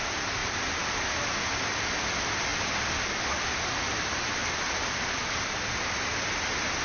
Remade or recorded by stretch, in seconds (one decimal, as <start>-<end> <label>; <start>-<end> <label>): 0.0-0.4 recorded; 0.4-1.0 remade; 1.0-2.5 recorded; 2.5-3.2 remade; 3.2-4.4 recorded; 4.4-5.6 remade; 5.6-6.8 recorded